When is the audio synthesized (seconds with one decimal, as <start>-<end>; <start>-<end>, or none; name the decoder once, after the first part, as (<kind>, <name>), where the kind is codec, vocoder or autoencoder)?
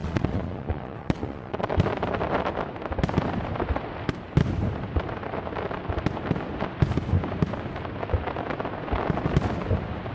0.0-1.7 (vocoder, Vocos)